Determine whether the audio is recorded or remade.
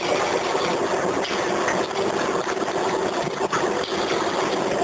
recorded